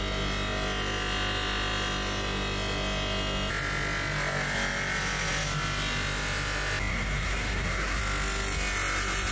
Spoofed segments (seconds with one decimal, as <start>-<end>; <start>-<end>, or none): 6.9-8.0